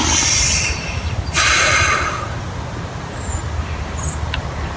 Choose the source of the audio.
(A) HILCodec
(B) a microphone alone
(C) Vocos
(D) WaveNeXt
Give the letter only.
B